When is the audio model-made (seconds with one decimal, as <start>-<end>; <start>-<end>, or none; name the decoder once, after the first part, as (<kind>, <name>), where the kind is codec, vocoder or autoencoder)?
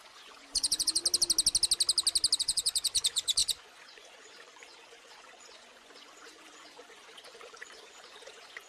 0.0-1.0 (vocoder, Vocos); 2.4-8.7